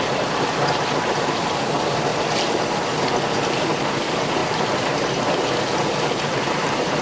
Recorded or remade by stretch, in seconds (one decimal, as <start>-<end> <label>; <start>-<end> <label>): 0.0-2.1 remade; 2.1-3.3 recorded; 3.3-7.0 remade